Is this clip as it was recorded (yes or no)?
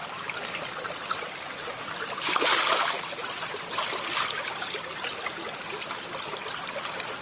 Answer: yes